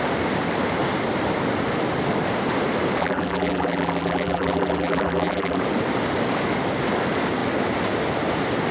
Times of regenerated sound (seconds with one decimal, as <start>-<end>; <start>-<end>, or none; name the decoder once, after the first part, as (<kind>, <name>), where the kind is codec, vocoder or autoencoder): 3.0-5.6 (vocoder, BigVGAN v2)